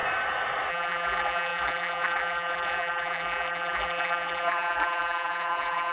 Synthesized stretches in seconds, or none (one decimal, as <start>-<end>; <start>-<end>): 0.7-5.9